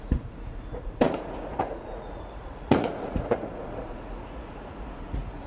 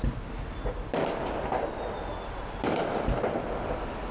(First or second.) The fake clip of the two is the first